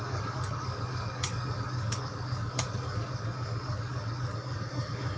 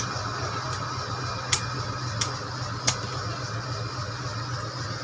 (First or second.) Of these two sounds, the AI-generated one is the first